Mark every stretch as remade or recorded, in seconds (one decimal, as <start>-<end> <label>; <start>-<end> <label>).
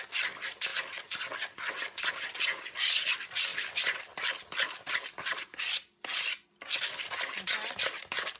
0.0-8.4 recorded